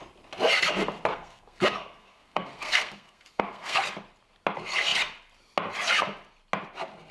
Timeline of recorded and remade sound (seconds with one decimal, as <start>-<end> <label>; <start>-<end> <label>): 0.0-1.1 recorded; 1.1-3.8 remade; 3.8-7.1 recorded

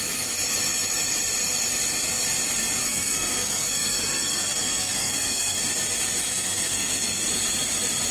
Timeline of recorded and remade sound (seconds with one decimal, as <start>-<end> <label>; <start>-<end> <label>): 0.0-2.8 recorded; 2.8-5.6 remade; 5.6-6.2 recorded; 6.2-7.3 remade; 7.3-8.1 recorded

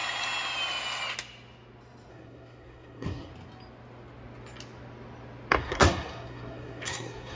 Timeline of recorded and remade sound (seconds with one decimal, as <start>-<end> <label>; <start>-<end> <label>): 0.0-2.1 recorded; 2.1-3.3 remade; 3.3-5.5 recorded; 5.5-7.4 remade

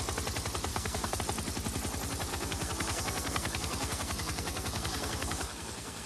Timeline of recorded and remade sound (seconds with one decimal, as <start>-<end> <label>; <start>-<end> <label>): 0.0-0.7 recorded; 0.7-1.2 remade; 1.2-2.3 recorded; 2.3-6.1 remade

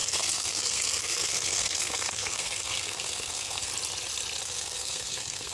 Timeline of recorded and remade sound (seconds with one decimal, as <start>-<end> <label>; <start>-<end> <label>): 0.0-3.7 remade; 3.7-4.4 recorded; 4.4-5.5 remade

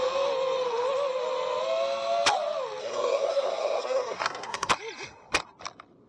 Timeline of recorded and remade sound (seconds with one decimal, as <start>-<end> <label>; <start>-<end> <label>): 0.0-2.8 recorded; 2.8-4.7 remade; 4.7-6.1 recorded